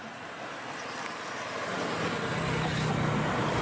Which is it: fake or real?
real